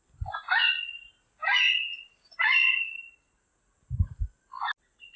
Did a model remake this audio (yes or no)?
no